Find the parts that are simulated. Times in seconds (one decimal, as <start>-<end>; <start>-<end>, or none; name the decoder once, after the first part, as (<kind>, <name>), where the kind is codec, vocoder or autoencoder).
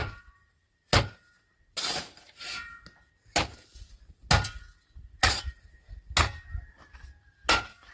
0.0-1.0 (vocoder, BigVGAN v2); 1.5-2.3; 5.2-5.9